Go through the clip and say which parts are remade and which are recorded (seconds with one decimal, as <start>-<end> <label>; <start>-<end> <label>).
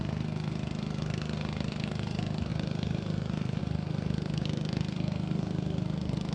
0.0-6.3 remade